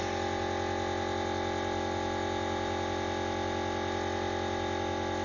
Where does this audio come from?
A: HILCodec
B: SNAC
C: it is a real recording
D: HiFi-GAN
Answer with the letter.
C